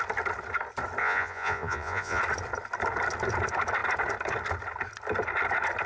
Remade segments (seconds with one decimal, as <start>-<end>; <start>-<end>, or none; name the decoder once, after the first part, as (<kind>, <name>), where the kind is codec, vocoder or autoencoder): 1.0-2.2 (vocoder, Vocos)